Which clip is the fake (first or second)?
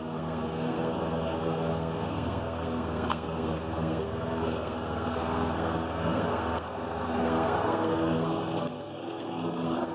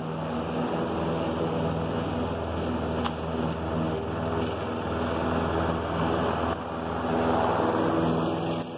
first